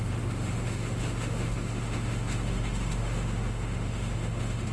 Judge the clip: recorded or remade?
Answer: remade